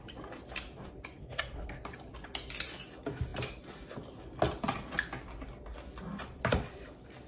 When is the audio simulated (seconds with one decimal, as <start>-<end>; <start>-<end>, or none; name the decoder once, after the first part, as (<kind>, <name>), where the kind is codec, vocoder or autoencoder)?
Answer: 1.2-1.8 (codec, SNAC)